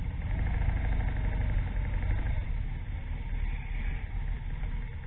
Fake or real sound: real